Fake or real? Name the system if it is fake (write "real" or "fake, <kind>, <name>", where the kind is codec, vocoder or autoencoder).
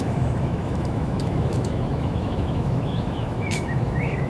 fake, autoencoder, DAC-VAE